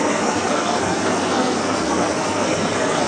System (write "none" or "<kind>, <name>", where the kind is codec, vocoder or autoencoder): codec, SNAC